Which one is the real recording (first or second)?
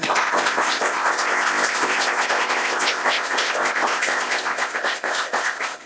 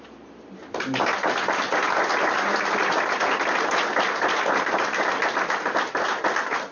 second